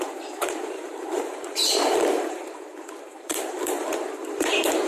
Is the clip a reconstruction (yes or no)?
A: yes